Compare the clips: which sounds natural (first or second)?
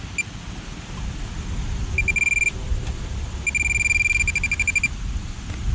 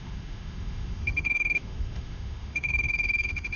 first